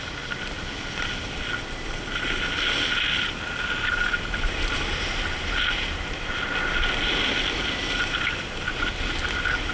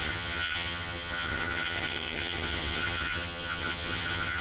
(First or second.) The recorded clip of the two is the first